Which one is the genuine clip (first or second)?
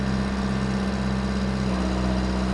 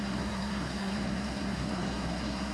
first